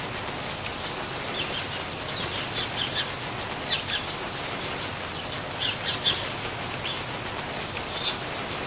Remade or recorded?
recorded